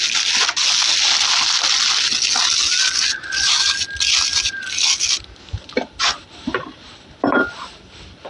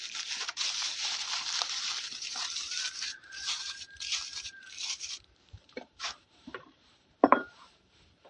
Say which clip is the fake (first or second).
second